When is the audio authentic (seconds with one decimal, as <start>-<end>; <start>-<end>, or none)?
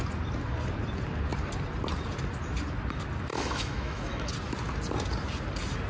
0.0-3.3; 4.3-5.9